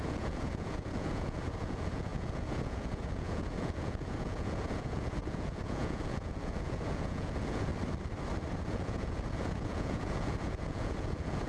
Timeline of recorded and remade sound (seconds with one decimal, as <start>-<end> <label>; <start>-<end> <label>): 0.0-7.7 remade; 7.7-8.6 recorded; 8.6-11.5 remade